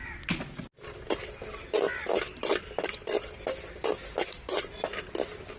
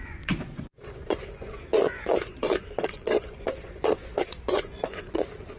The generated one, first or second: second